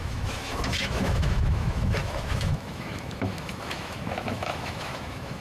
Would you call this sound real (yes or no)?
no